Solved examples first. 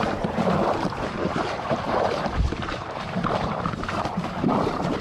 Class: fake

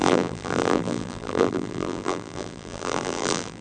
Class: fake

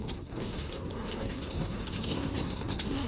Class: fake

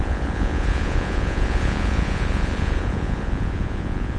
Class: fake